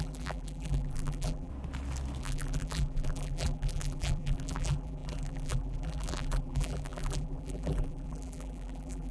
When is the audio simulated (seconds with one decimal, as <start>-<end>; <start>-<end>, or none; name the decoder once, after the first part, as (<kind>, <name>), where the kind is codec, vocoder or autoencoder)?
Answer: 0.0-1.5 (vocoder, BigVGAN v2); 2.2-9.1